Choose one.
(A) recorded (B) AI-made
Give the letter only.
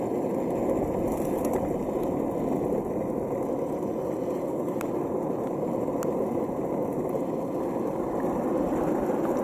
A